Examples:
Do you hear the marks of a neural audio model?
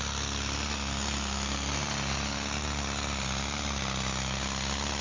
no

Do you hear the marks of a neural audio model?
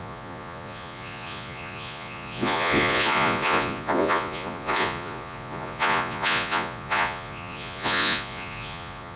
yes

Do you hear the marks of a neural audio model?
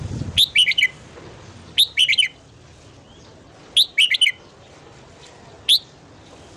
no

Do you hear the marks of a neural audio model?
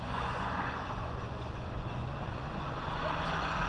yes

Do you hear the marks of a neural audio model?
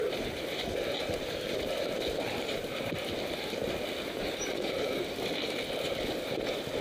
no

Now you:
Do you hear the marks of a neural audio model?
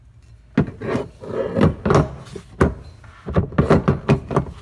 no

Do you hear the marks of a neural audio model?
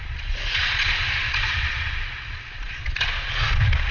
yes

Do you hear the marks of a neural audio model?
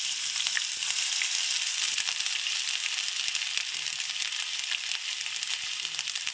no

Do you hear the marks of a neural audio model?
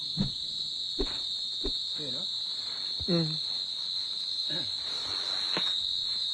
no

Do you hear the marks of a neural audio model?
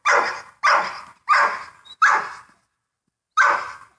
no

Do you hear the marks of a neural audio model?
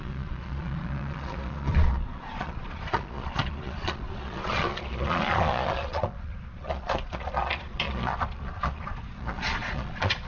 yes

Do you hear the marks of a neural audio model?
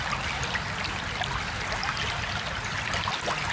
no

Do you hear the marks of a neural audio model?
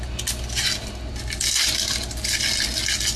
no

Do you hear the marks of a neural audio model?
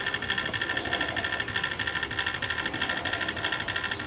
no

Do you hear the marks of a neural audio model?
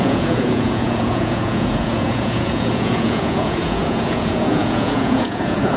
yes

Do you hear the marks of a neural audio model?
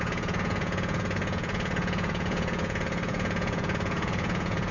yes